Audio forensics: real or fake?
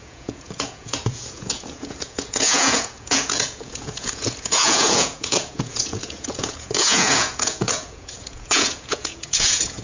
fake